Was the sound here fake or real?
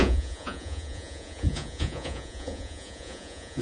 fake